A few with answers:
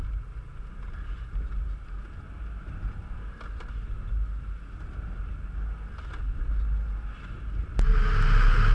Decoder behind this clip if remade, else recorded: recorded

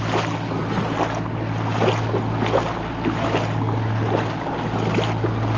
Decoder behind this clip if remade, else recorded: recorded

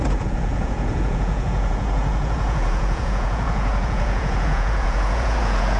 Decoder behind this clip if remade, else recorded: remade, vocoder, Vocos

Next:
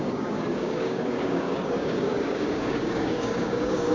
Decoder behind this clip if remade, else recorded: remade, codec, DAC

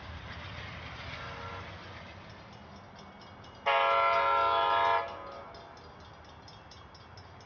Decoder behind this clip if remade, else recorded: recorded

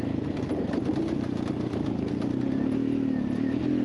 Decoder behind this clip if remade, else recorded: recorded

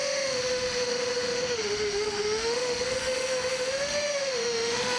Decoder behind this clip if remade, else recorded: remade, autoencoder, DAC-VAE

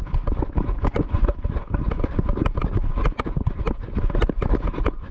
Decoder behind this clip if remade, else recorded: recorded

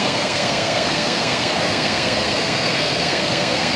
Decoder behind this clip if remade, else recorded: remade, codec, SNAC